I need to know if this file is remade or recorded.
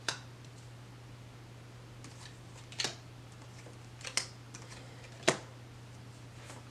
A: recorded